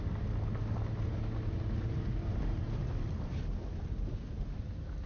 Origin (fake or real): real